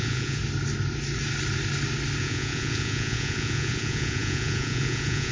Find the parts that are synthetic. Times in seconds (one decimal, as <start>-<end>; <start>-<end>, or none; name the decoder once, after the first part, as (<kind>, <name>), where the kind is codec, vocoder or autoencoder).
0.0-0.4 (vocoder, Vocos); 2.2-5.3